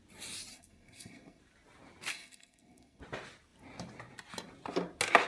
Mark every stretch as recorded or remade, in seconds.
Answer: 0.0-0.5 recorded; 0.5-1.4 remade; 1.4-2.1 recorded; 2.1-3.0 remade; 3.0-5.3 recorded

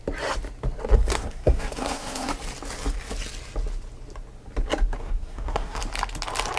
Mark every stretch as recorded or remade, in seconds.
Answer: 0.0-1.1 recorded; 1.1-2.3 remade; 2.3-5.0 recorded; 5.0-5.8 remade; 5.8-6.6 recorded

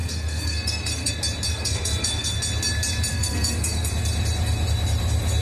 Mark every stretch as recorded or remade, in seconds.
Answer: 0.0-1.1 remade; 1.1-1.5 recorded; 1.5-2.4 remade; 2.4-3.1 recorded; 3.1-3.9 remade; 3.9-5.4 recorded

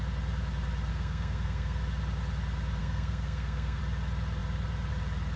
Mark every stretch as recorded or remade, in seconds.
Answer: 0.0-0.9 recorded; 0.9-1.8 remade; 1.8-2.8 recorded; 2.8-3.8 remade; 3.8-5.4 recorded

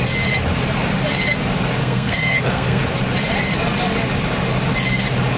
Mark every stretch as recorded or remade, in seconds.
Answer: 0.0-1.8 recorded; 1.8-2.8 remade; 2.8-5.4 recorded

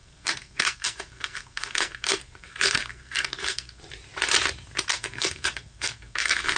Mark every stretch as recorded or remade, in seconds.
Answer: 0.0-3.8 remade; 3.8-4.9 recorded; 4.9-6.6 remade

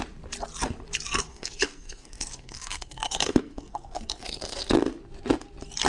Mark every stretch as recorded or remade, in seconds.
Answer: 0.0-1.3 recorded; 1.3-4.7 remade; 4.7-5.9 recorded

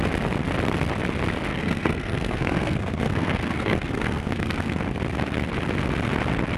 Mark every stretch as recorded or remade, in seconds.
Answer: 0.0-1.5 recorded; 1.5-4.8 remade; 4.8-6.6 recorded